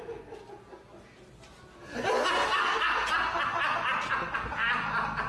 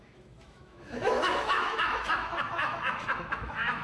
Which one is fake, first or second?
second